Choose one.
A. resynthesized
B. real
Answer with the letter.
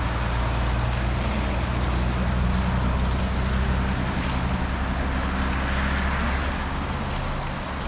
B